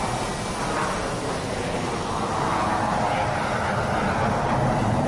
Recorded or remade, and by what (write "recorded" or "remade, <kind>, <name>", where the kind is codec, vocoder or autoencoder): recorded